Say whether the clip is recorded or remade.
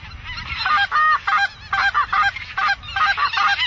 recorded